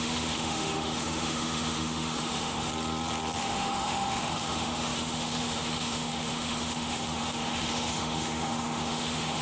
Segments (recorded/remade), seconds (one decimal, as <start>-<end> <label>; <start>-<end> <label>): 0.0-2.7 remade; 2.7-3.4 recorded; 3.4-9.4 remade